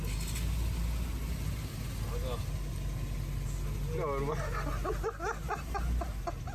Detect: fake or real real